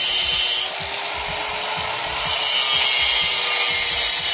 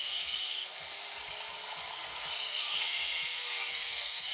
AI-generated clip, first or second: second